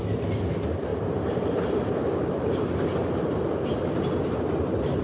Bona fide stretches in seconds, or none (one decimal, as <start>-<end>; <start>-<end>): 0.0-0.9; 3.4-3.8